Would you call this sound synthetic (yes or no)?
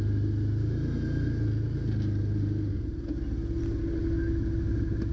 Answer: no